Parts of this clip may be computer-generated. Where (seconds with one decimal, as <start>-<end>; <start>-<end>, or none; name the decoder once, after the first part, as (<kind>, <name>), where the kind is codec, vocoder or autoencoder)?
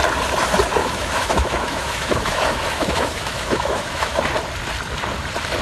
0.8-4.2 (autoencoder, DAC-VAE)